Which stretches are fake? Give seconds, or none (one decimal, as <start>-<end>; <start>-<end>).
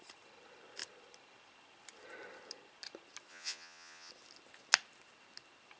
3.3-4.1